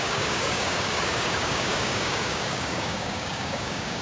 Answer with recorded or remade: remade